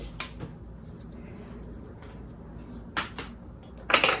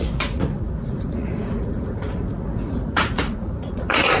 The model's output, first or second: second